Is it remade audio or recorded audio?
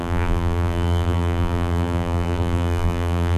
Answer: remade